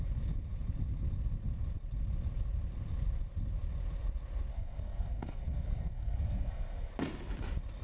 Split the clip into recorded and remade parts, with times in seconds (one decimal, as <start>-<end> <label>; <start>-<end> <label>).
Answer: 0.0-4.5 recorded; 4.5-6.9 remade; 6.9-7.8 recorded